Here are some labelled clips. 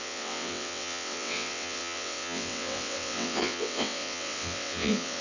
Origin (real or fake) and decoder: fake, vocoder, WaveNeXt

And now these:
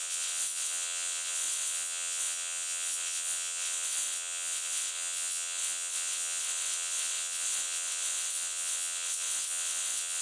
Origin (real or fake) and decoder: fake, vocoder, WaveNeXt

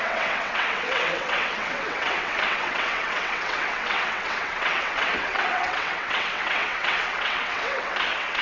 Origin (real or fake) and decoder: fake, vocoder, WaveNeXt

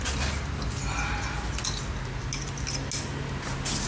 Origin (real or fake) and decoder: real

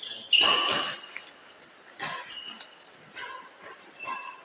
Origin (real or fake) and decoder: real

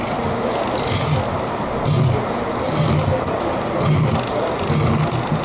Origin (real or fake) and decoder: real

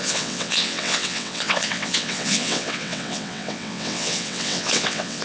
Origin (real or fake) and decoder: fake, vocoder, WaveNeXt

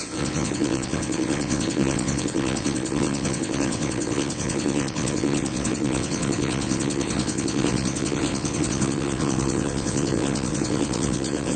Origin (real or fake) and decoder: fake, vocoder, WaveNeXt